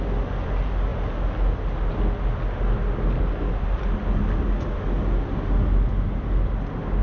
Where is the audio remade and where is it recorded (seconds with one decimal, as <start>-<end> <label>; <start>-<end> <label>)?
0.0-7.0 recorded

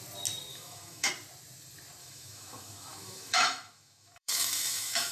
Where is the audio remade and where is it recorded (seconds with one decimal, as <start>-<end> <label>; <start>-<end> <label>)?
0.0-0.5 recorded; 0.5-1.1 remade; 1.1-2.0 recorded; 2.0-5.1 remade

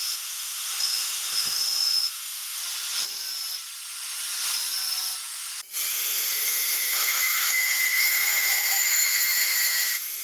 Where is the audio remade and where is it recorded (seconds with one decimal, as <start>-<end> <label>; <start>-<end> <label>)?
0.0-2.6 remade; 2.6-5.9 recorded; 5.9-10.2 remade

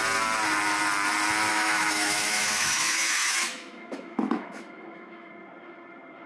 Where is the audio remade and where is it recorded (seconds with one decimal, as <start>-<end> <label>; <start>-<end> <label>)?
0.0-1.5 recorded; 1.5-5.3 remade; 5.3-6.3 recorded

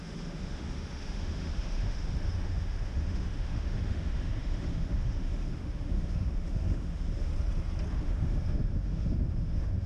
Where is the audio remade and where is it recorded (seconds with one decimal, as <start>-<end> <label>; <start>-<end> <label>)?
0.0-7.3 remade; 7.3-7.9 recorded; 7.9-9.9 remade